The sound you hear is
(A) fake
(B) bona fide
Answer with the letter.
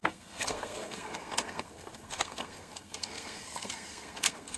A